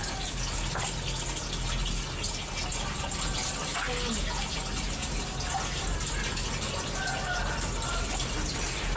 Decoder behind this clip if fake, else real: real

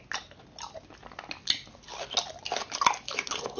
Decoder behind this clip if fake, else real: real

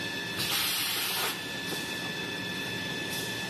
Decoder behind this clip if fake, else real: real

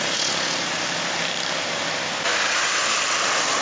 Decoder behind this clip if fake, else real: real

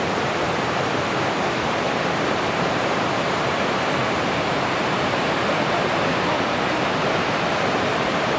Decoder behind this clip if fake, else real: fake, vocoder, BigVGAN v2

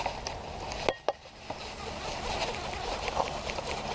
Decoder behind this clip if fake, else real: real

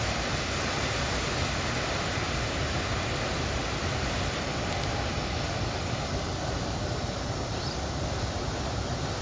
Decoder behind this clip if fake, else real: real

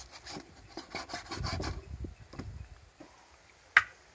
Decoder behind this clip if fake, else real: real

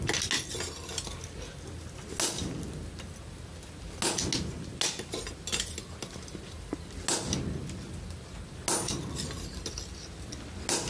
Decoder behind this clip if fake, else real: real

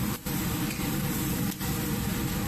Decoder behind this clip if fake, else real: fake, vocoder, BigVGAN v2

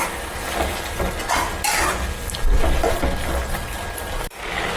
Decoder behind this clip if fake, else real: real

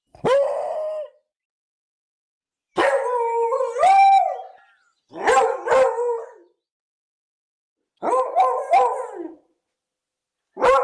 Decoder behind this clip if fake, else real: real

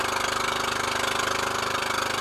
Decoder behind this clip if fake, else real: fake, vocoder, BigVGAN v2